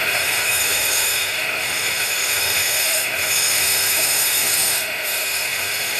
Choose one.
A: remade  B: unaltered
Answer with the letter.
A